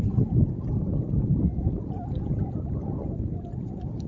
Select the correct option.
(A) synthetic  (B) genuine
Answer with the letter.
B